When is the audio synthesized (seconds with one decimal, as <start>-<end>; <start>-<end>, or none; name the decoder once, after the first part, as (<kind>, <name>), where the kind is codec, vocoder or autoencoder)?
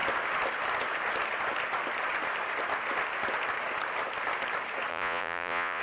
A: 4.9-5.8 (vocoder, Vocos)